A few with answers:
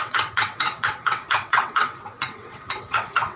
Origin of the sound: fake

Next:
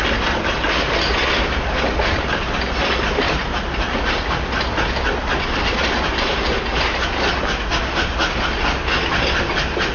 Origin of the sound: real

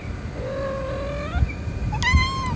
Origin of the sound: real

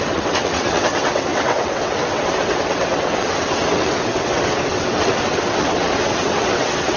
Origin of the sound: fake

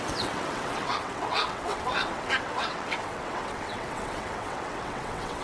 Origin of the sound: fake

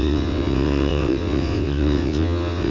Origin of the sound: fake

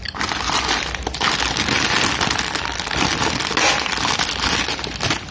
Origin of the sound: real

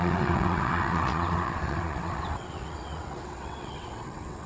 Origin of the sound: fake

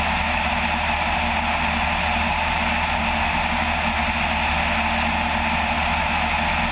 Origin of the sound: real